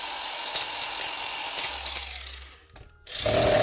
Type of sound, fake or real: real